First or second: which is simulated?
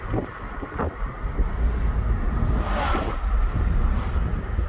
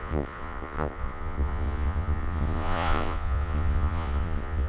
second